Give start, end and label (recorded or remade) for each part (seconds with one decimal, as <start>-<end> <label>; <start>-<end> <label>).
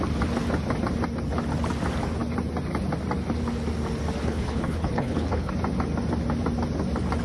0.0-4.2 recorded; 4.2-5.5 remade; 5.5-7.2 recorded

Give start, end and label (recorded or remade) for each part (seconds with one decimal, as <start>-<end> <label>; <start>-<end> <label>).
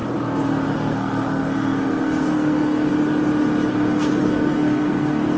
0.0-0.7 recorded; 0.7-2.9 remade; 2.9-3.7 recorded; 3.7-5.4 remade